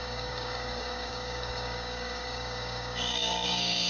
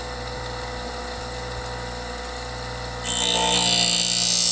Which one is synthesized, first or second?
first